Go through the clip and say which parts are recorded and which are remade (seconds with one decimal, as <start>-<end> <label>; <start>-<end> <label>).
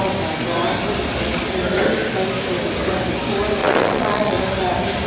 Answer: 0.0-3.6 recorded; 3.6-4.4 remade; 4.4-5.1 recorded